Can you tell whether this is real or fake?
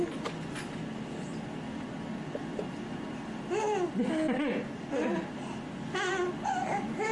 real